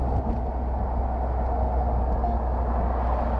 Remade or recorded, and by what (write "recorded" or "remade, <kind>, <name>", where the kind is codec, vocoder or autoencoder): recorded